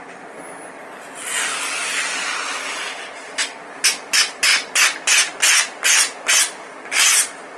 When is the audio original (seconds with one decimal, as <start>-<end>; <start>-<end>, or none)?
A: 0.0-7.6